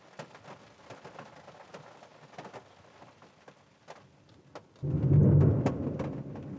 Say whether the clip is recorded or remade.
recorded